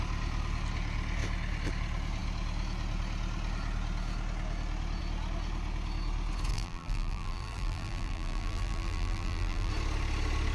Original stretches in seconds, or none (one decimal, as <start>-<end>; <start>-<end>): 0.0-6.5; 9.7-10.5

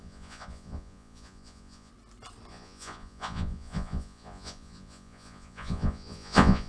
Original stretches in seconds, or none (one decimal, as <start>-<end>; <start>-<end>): 1.9-2.5

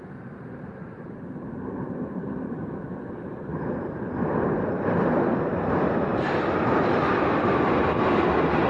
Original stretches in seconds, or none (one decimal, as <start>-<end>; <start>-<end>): 0.0-0.5; 4.1-6.1; 6.6-8.7

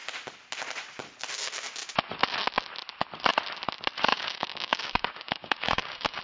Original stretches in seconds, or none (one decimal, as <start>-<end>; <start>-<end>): 0.0-4.1